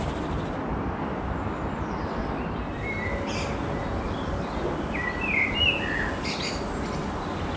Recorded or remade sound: recorded